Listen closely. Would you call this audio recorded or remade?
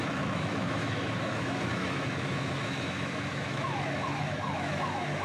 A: remade